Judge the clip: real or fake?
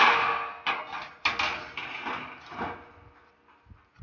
real